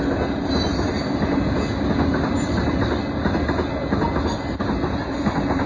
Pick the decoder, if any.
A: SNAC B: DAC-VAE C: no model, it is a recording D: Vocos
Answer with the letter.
C